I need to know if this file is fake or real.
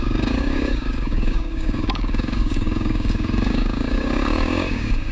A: fake